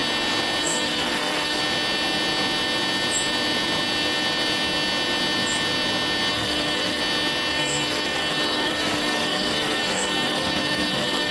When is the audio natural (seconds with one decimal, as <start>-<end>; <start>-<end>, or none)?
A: 0.0-0.6; 1.6-6.3; 7.0-7.5